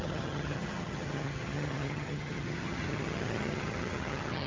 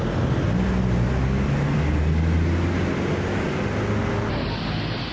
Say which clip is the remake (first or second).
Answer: first